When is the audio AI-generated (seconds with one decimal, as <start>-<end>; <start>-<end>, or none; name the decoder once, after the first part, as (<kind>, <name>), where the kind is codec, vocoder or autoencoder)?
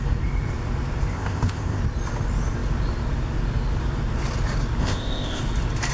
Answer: 1.1-1.8 (codec, ZipCodec); 4.8-5.4